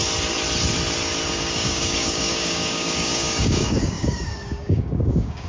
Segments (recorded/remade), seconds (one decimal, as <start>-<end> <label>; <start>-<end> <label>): 0.0-1.3 recorded; 1.3-5.5 remade